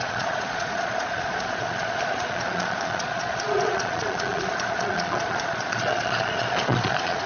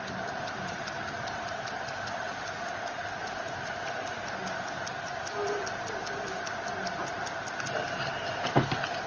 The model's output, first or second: first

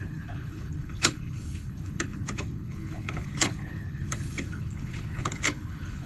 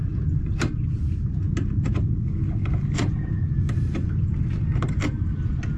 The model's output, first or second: first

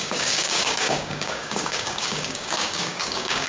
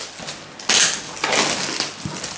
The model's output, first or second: first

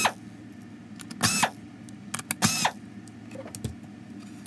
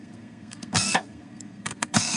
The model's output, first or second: second